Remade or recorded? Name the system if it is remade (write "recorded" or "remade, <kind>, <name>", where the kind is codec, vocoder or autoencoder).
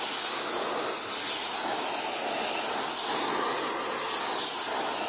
recorded